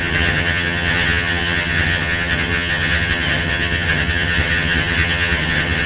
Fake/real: fake